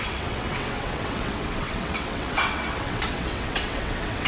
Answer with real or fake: fake